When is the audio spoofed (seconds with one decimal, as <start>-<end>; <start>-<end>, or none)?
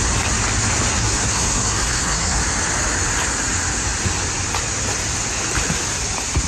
0.9-2.4